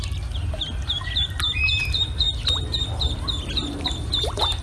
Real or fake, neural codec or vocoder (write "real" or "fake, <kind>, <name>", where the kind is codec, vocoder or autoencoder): real